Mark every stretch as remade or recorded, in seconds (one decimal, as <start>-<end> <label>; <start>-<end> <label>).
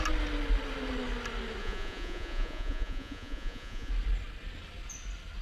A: 0.0-1.6 recorded; 1.6-3.9 remade; 3.9-5.4 recorded